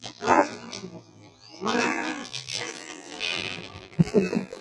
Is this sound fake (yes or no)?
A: yes